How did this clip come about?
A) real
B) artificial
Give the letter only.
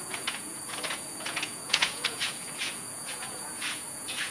B